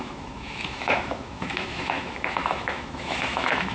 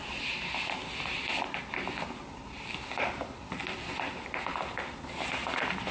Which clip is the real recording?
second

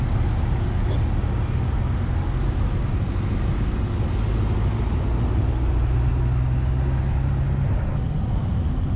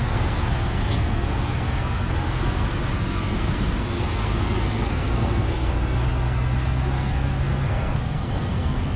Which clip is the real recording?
first